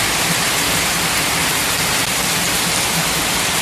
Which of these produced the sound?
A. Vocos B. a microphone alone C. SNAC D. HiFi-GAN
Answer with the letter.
B